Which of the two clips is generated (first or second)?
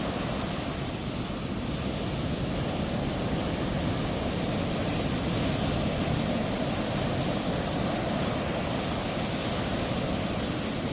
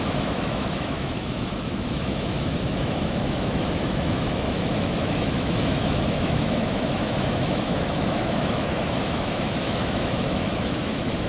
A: second